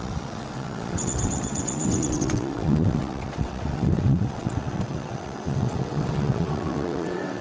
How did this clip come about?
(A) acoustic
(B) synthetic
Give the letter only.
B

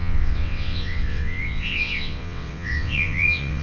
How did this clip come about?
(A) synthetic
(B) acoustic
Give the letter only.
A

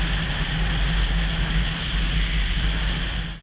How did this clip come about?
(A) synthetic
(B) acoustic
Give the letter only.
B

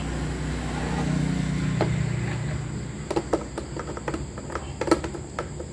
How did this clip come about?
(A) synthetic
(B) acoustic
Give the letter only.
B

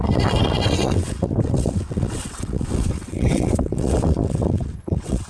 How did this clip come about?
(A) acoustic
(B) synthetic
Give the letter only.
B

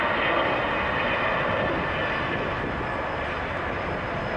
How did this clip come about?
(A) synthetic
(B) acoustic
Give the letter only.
B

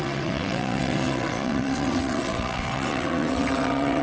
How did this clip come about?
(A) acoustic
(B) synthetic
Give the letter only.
B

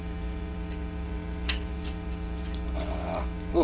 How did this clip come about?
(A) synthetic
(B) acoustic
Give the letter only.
A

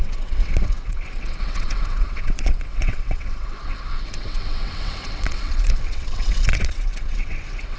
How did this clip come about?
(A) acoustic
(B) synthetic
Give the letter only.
B